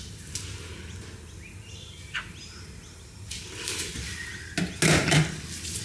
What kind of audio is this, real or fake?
real